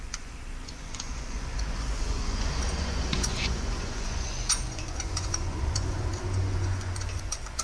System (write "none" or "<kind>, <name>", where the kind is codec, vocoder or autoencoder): vocoder, Vocos